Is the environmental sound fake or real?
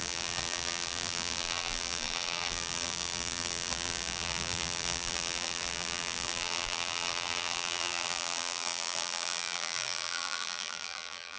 fake